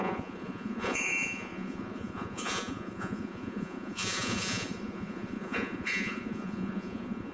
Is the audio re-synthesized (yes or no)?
yes